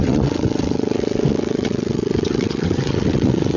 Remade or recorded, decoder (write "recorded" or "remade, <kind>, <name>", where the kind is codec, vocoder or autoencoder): remade, vocoder, WaveNeXt